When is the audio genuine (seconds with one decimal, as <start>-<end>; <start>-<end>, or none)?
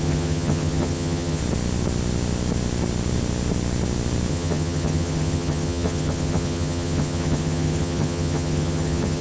1.4-4.3